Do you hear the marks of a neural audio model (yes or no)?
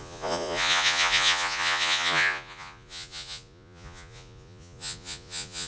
yes